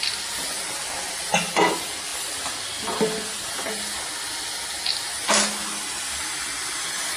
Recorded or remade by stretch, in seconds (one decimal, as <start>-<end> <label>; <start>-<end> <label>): 0.0-7.2 recorded